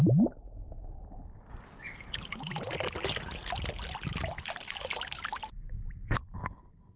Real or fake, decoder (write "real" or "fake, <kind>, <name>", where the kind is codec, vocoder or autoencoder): real